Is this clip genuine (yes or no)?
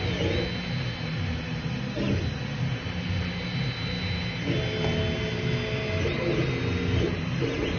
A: yes